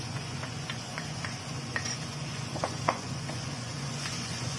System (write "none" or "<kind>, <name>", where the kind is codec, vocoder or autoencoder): vocoder, Vocos